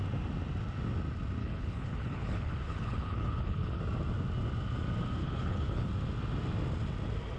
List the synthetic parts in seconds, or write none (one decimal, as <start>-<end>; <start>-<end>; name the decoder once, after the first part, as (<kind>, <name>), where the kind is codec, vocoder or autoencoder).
1.4-3.8 (codec, HILCodec); 5.2-5.9